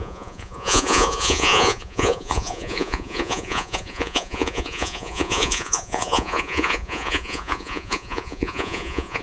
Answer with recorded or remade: remade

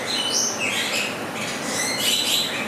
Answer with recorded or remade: recorded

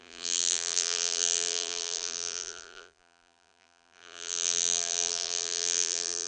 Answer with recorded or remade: remade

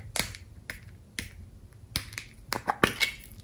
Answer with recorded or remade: recorded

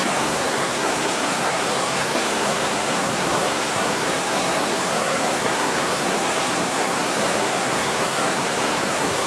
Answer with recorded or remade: remade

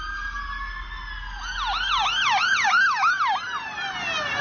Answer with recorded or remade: recorded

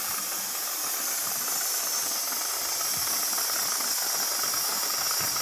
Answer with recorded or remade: recorded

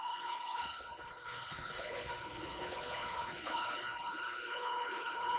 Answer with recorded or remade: remade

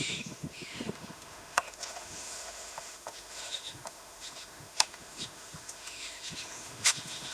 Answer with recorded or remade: remade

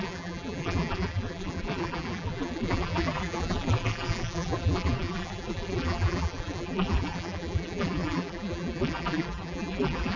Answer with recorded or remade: remade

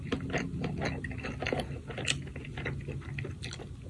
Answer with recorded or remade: recorded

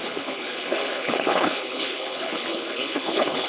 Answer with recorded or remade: remade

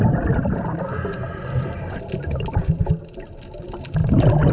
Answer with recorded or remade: recorded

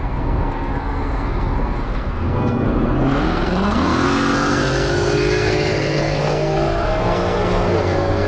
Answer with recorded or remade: remade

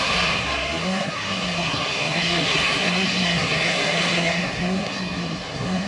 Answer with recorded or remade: remade